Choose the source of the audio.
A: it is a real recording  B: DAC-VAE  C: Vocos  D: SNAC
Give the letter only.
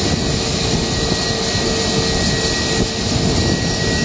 A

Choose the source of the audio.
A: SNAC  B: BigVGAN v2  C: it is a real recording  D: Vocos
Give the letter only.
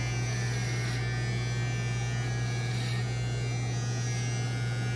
C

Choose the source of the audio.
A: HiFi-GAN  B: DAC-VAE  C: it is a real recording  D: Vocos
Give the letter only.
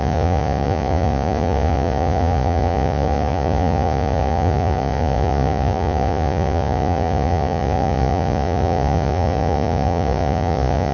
D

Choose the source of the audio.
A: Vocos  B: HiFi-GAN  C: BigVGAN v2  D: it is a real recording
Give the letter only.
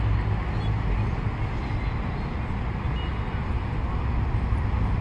D